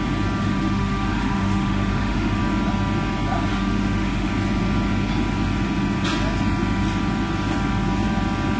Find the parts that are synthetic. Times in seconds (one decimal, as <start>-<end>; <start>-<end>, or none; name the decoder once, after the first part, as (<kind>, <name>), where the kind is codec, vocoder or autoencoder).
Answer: 0.4-2.4 (autoencoder, DAC-VAE); 3.5-4.3